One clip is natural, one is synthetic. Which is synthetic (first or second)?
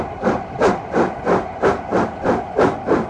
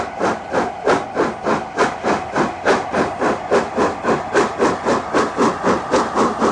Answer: first